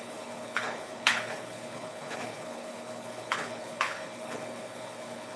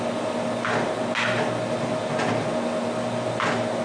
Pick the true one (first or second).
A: second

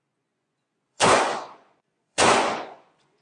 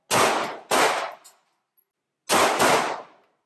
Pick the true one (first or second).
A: second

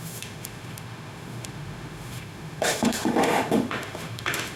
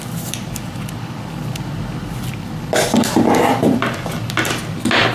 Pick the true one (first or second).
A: second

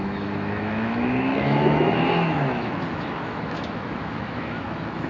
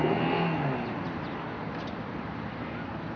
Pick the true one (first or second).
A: second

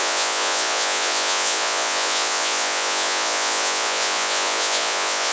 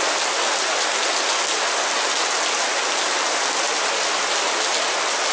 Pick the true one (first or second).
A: second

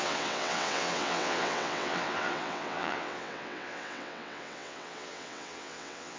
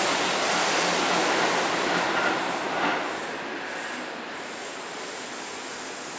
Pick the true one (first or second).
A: second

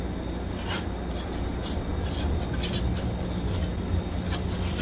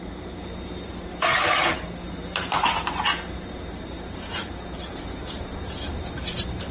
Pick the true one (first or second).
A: first